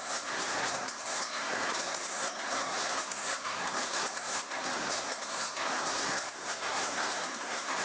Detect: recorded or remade remade